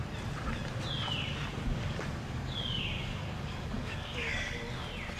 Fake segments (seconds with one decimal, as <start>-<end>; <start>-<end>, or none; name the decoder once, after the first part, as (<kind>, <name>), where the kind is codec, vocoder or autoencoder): 1.5-4.6 (codec, DAC)